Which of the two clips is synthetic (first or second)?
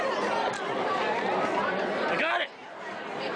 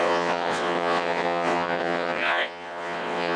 second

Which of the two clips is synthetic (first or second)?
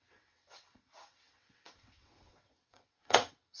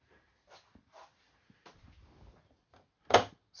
first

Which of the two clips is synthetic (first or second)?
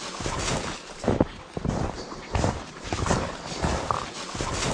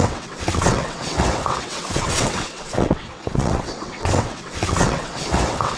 second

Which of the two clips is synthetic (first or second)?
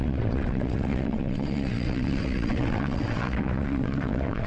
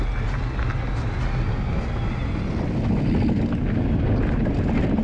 first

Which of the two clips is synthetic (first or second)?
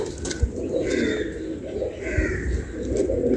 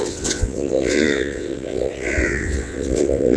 second